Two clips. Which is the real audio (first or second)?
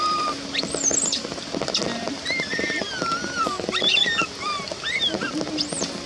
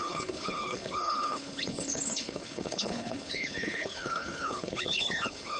first